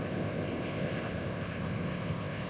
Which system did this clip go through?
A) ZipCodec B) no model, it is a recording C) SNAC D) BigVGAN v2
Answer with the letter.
A